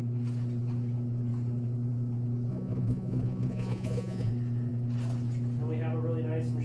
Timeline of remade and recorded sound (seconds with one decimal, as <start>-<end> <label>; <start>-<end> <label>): 0.0-2.5 recorded; 2.5-4.3 remade; 4.3-6.6 recorded